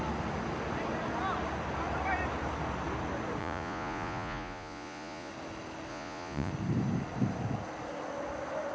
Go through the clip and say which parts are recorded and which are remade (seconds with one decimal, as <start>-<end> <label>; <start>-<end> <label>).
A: 0.0-3.4 recorded; 3.4-5.3 remade; 5.3-5.9 recorded; 5.9-6.5 remade; 6.5-8.7 recorded